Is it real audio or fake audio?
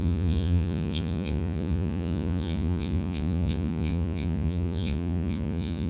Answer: fake